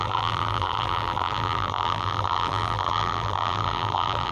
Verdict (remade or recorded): remade